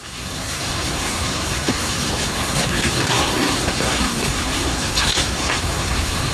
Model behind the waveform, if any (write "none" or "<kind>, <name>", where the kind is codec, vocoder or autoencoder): codec, SNAC